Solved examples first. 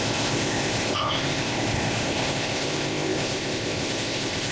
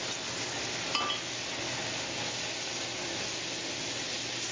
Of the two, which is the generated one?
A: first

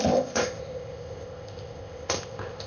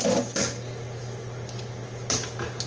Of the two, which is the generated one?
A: first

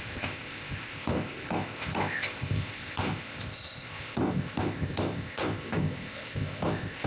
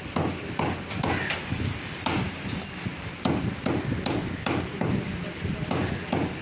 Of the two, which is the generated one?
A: first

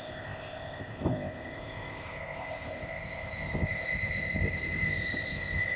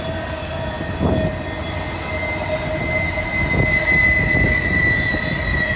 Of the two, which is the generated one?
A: first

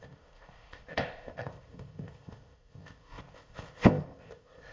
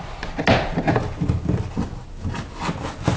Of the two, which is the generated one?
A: first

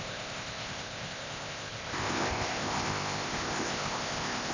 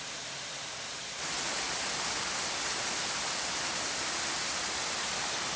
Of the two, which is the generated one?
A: first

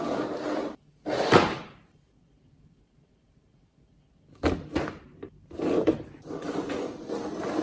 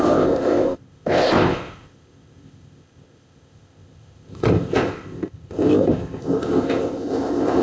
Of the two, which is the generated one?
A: second